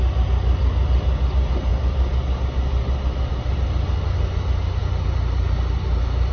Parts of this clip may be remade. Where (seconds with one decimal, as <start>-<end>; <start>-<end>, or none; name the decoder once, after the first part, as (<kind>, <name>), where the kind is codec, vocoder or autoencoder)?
none